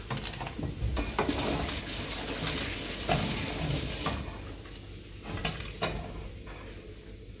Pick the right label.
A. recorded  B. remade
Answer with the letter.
A